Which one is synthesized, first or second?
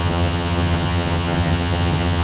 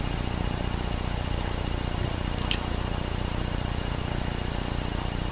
first